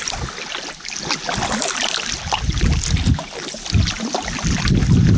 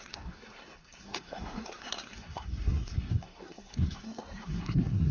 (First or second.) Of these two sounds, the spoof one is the second